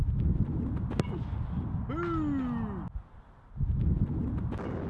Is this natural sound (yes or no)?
yes